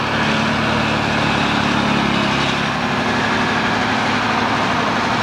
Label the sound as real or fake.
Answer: real